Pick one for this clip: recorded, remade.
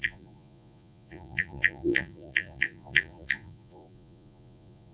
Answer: remade